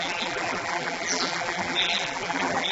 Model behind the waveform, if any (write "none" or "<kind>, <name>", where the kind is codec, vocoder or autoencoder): vocoder, BigVGAN v2